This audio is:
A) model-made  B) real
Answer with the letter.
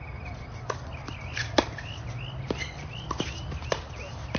B